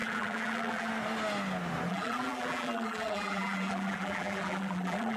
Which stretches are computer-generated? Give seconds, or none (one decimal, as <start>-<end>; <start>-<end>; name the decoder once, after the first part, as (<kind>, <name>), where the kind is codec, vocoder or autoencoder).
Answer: 0.0-0.9 (vocoder, BigVGAN v2); 1.9-5.2